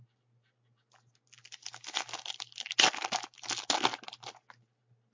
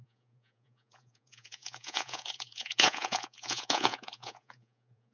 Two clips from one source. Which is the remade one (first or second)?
second